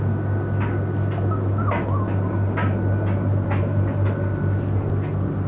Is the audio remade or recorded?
recorded